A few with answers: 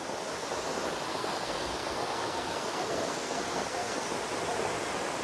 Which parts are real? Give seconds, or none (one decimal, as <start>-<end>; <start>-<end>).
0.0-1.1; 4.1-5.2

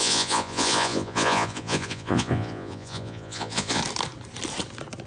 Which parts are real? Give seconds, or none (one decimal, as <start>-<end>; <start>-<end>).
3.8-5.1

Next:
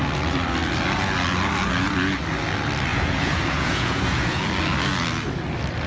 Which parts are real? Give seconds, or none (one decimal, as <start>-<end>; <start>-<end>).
0.0-2.9; 4.4-5.9